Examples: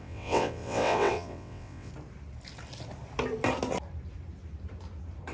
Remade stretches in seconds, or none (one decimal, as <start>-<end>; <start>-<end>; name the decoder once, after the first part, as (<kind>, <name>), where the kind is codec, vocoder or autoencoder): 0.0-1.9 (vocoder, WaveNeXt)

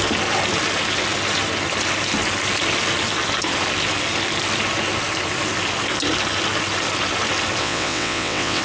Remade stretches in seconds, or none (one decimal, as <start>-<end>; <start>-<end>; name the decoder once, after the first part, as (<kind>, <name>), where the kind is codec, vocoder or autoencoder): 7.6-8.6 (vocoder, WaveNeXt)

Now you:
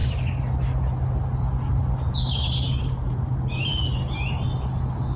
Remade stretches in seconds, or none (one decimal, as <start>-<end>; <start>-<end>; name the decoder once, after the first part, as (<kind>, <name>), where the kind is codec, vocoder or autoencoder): none

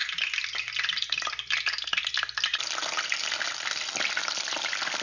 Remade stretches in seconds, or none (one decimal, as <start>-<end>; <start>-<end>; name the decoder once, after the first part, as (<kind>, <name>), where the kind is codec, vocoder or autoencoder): none

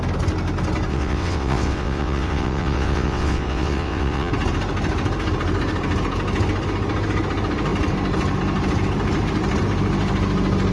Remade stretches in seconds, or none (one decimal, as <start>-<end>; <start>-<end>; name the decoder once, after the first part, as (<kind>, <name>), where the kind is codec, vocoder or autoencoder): 0.9-4.3 (vocoder, WaveNeXt)

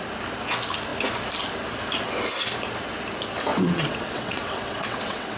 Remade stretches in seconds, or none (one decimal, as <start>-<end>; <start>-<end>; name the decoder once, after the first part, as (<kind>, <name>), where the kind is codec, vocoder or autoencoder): 3.5-5.4 (vocoder, WaveNeXt)

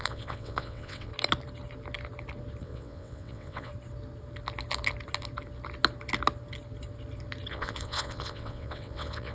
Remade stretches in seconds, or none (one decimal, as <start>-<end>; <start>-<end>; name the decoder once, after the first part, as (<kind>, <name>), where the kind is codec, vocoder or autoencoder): 0.0-1.1 (vocoder, WaveNeXt); 2.6-3.7; 7.5-9.3

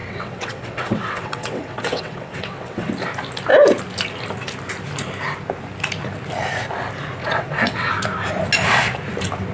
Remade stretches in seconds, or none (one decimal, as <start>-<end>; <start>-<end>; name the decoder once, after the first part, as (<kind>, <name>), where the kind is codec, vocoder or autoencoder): 0.0-2.9 (vocoder, WaveNeXt); 7.2-7.9